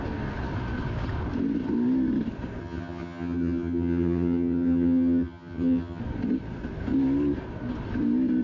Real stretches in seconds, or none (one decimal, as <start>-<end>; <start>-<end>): 0.0-2.6; 6.0-8.4